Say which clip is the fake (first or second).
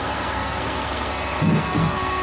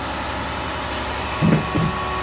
first